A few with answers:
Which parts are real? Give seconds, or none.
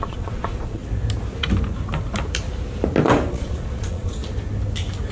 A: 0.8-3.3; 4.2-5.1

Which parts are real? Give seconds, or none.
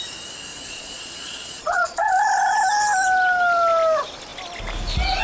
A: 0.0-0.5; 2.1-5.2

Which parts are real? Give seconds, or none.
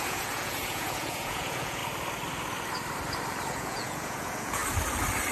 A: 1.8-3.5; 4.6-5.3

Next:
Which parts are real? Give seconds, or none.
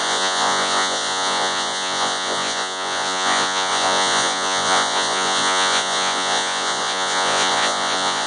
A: none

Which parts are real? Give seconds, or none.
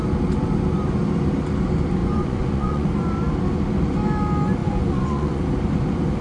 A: 0.0-2.0; 2.9-4.6; 5.4-6.2